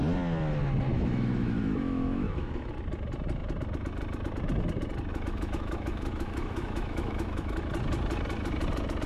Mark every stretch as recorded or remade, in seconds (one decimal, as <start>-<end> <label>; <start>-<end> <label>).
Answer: 0.0-0.9 recorded; 0.9-2.7 remade; 2.7-5.1 recorded; 5.1-7.7 remade; 7.7-9.1 recorded